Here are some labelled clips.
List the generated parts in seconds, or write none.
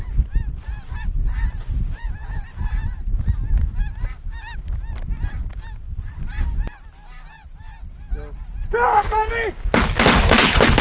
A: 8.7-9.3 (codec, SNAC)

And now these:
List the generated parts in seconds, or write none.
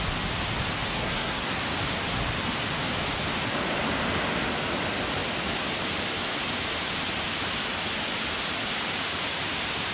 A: 1.0-1.6 (codec, SNAC)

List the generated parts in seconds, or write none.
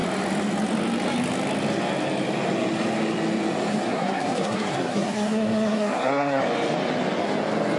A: 3.7-6.4 (codec, SNAC)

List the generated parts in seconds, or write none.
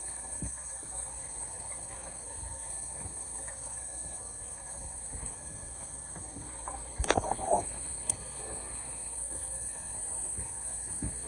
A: 0.0-11.3 (codec, SNAC)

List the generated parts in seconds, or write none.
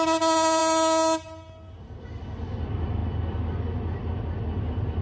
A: none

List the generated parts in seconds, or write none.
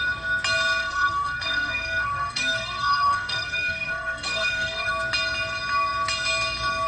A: 0.8-4.9 (codec, SNAC)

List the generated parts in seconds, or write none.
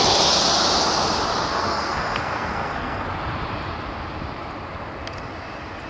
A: 1.5-3.1 (codec, SNAC)